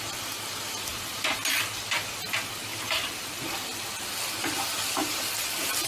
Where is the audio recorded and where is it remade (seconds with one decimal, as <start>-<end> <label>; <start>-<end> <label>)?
0.0-2.7 recorded; 2.7-3.4 remade; 3.4-5.0 recorded; 5.0-5.9 remade